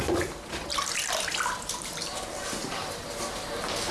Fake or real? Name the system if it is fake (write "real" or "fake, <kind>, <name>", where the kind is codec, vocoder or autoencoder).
fake, vocoder, BigVGAN v2